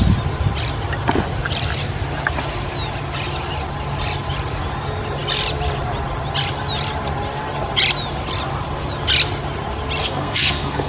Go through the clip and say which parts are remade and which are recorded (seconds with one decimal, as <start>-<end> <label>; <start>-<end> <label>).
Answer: 0.0-10.0 recorded; 10.0-10.9 remade